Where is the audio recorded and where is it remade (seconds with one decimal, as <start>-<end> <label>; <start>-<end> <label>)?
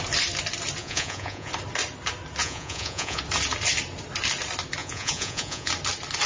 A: 0.0-0.8 recorded; 0.8-1.5 remade; 1.5-2.4 recorded; 2.4-3.2 remade; 3.2-4.8 recorded; 4.8-5.7 remade; 5.7-6.3 recorded